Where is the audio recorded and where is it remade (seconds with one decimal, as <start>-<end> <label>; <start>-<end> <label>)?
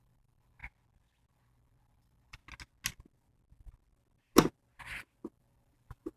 0.0-0.6 remade; 0.6-1.3 recorded; 1.3-2.4 remade; 2.4-5.3 recorded; 5.3-6.2 remade